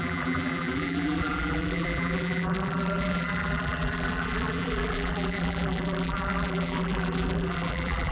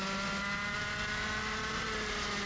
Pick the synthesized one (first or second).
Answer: first